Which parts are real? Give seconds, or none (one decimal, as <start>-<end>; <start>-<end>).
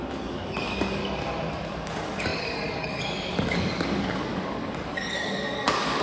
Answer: 1.0-1.5